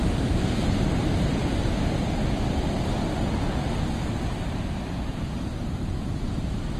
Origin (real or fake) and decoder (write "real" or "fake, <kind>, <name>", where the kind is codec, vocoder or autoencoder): real